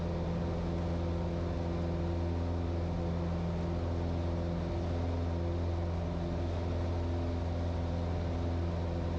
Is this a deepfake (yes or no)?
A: no